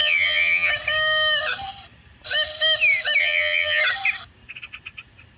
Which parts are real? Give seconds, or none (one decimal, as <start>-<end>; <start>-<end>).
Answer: 0.7-3.2; 3.8-5.4

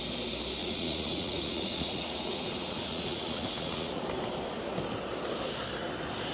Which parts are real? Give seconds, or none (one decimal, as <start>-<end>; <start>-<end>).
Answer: 0.0-0.6; 4.0-6.3

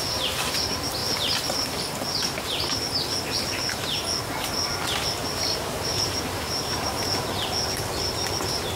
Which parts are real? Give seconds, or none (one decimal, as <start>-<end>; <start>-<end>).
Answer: 0.0-5.2; 7.0-8.8

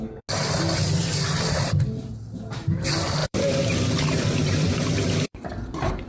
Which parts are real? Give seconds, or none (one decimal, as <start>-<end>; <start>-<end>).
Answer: 0.0-3.2; 5.4-6.1

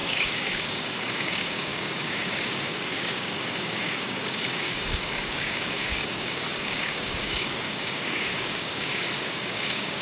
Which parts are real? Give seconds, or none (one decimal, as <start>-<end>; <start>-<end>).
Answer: none

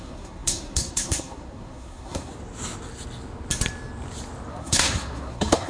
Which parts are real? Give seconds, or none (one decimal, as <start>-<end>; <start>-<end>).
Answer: 2.3-4.5

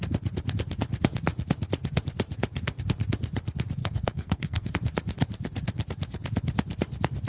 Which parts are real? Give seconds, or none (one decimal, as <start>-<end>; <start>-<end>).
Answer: 0.0-3.8; 4.7-7.3